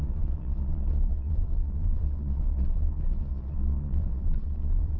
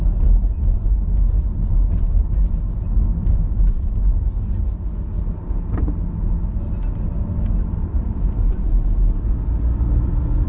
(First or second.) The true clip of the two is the second